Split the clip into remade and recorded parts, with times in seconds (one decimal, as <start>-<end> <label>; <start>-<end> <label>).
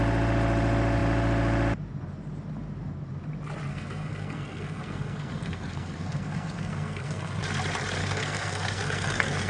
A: 0.0-3.7 recorded; 3.7-7.4 remade; 7.4-8.0 recorded; 8.0-9.5 remade